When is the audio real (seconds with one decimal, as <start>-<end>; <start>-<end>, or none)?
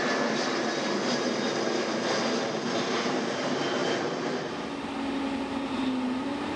0.0-6.6